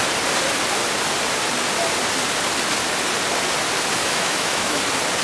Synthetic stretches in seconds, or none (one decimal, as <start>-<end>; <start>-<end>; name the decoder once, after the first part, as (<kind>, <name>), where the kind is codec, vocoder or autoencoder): 4.0-4.8 (autoencoder, DAC-VAE)